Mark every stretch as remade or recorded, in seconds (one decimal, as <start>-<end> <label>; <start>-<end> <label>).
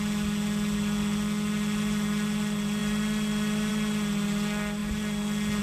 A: 0.0-5.6 recorded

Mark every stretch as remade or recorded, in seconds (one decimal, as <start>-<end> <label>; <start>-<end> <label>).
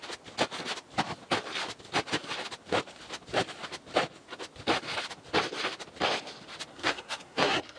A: 0.0-6.7 recorded; 6.7-7.8 remade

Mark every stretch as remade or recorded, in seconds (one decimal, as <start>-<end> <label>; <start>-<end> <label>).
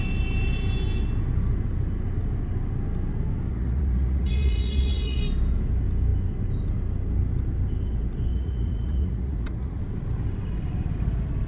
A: 0.0-3.5 recorded; 3.5-5.2 remade; 5.2-8.3 recorded; 8.3-9.8 remade; 9.8-11.5 recorded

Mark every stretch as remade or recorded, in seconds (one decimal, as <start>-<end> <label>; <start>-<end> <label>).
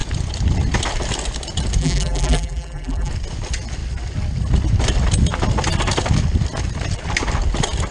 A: 0.0-1.8 recorded; 1.8-3.1 remade; 3.1-7.9 recorded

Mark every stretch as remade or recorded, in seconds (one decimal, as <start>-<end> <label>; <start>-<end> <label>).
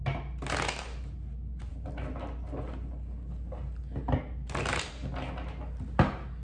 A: 0.0-6.4 recorded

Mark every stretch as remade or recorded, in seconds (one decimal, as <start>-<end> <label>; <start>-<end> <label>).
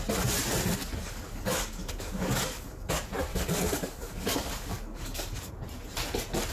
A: 0.0-1.0 recorded; 1.0-2.9 remade; 2.9-3.3 recorded; 3.3-5.5 remade; 5.5-6.5 recorded